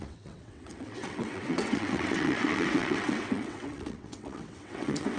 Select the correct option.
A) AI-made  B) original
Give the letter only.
A